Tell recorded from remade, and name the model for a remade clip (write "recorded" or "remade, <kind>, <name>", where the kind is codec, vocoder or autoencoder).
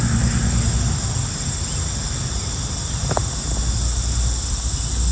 recorded